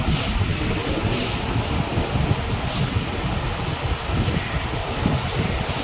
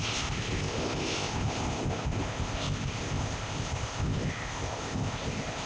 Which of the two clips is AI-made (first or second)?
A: second